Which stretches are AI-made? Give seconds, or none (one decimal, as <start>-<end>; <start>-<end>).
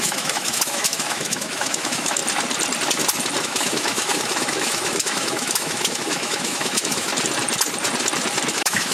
0.0-2.2; 3.4-7.1; 8.5-8.9